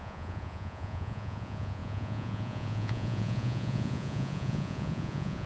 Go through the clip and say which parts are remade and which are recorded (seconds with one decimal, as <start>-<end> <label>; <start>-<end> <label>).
0.0-5.5 remade